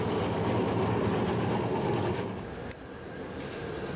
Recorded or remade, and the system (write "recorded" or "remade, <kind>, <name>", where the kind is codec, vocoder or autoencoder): recorded